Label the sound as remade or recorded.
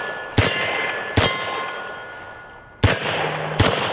recorded